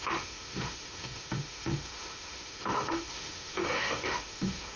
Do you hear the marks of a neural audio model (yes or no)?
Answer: yes